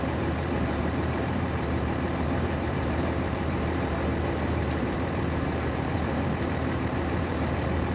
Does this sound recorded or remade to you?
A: remade